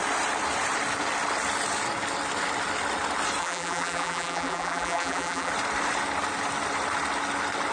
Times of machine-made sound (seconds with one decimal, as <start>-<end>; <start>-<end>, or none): 3.4-5.5